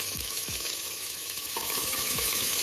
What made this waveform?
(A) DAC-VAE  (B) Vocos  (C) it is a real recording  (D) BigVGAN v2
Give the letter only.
A